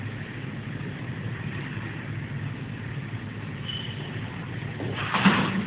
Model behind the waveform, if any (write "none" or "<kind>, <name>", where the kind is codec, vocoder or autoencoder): vocoder, BigVGAN v2